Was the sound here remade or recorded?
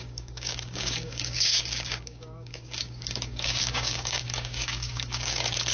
remade